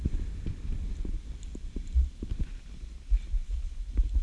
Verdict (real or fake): real